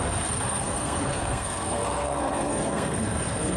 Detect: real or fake fake